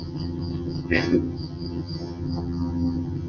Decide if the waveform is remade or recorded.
remade